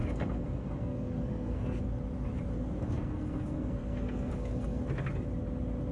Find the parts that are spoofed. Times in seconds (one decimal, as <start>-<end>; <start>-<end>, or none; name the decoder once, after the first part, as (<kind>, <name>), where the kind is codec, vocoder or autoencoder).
0.0-1.8 (codec, SNAC); 2.8-4.8